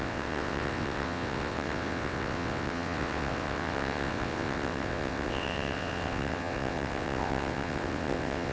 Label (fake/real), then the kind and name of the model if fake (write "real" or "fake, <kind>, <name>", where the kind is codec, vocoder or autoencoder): fake, vocoder, WaveNeXt